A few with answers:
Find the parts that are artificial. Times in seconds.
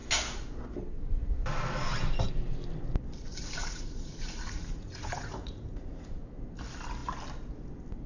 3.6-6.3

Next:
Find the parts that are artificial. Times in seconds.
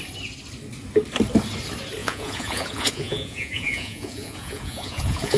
2.0-5.4